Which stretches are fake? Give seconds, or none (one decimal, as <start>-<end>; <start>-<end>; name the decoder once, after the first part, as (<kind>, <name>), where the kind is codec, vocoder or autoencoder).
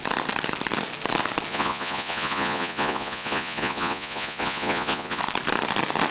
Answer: 1.5-5.2 (vocoder, Vocos)